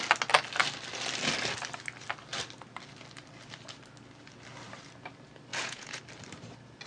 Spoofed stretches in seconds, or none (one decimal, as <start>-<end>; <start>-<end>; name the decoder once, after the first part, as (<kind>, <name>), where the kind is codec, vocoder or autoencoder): 5.5-6.0 (vocoder, Vocos)